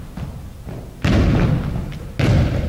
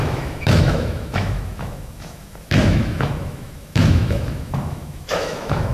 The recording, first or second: first